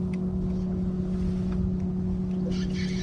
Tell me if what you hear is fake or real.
real